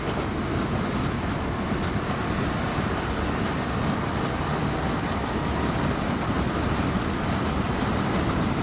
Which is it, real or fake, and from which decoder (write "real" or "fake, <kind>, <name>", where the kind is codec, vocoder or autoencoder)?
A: real